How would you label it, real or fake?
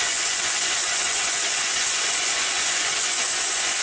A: fake